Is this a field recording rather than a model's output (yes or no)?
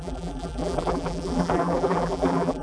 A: no